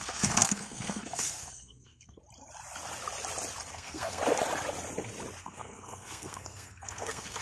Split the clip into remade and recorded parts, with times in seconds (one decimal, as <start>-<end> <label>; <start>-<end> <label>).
0.0-2.2 remade; 2.2-3.7 recorded; 3.7-4.2 remade; 4.2-5.4 recorded; 5.4-7.4 remade